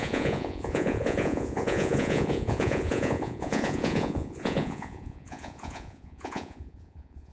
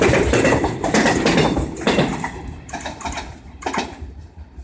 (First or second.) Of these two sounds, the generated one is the first